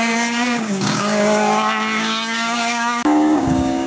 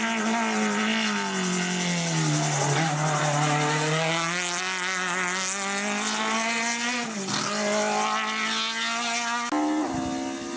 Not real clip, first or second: first